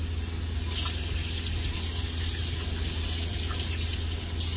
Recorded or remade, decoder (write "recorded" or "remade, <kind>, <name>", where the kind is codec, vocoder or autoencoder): recorded